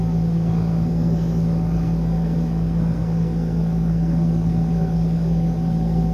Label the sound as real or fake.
fake